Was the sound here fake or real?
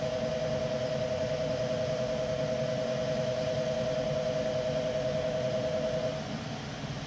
real